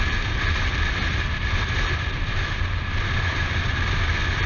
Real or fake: fake